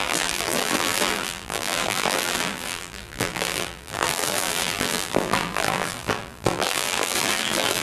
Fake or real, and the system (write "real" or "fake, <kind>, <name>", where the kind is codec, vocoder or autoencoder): fake, vocoder, BigVGAN v2